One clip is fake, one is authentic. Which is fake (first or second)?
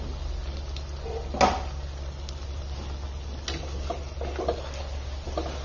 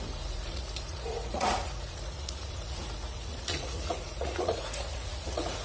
second